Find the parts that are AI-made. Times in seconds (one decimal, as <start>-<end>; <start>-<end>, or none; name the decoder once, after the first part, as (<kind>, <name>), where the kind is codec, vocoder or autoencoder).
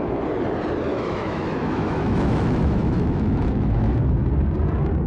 0.9-3.9 (autoencoder, DAC-VAE)